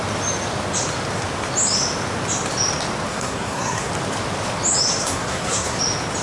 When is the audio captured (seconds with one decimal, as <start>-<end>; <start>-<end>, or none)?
0.0-3.1; 3.9-5.0; 5.8-6.2